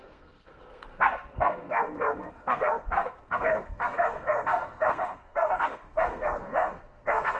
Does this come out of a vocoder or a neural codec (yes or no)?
yes